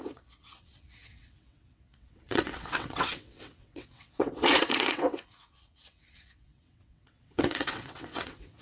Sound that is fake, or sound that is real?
fake